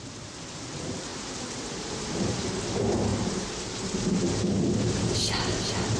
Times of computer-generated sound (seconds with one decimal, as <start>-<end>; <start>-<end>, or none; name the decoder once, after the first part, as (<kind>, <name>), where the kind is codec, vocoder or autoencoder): 1.1-2.5 (vocoder, BigVGAN v2); 3.1-3.9